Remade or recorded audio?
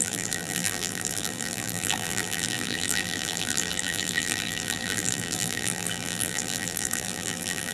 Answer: remade